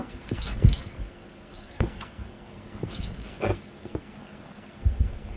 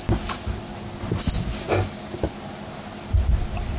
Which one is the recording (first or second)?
second